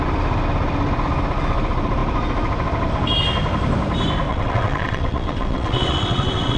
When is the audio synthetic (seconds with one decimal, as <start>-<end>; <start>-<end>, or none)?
4.3-6.6